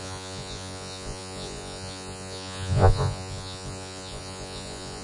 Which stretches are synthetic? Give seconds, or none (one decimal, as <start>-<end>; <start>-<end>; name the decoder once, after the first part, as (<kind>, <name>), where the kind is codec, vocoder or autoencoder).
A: 0.0-5.0 (vocoder, Vocos)